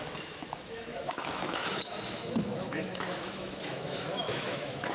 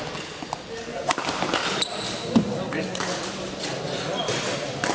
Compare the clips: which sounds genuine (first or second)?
second